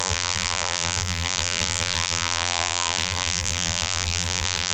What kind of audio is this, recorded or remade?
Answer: remade